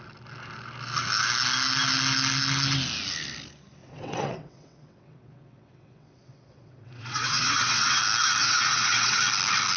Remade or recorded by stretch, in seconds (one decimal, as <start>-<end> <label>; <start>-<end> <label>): 0.0-3.8 recorded; 3.8-8.0 remade; 8.0-8.4 recorded; 8.4-9.2 remade; 9.2-9.8 recorded